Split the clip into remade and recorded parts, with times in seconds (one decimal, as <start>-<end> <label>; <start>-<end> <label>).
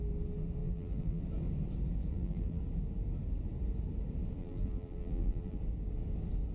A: 0.0-0.6 recorded; 0.6-1.2 remade; 1.2-2.1 recorded; 2.1-2.6 remade; 2.6-4.4 recorded; 4.4-5.6 remade; 5.6-6.5 recorded